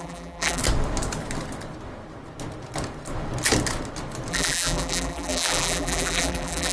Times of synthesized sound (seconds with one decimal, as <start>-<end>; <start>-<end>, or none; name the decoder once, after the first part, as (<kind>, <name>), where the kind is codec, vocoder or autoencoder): 0.0-0.6 (vocoder, BigVGAN v2); 4.3-6.7